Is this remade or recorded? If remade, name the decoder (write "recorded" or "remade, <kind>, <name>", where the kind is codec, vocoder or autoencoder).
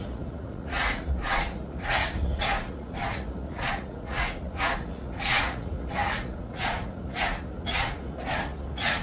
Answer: remade, vocoder, Vocos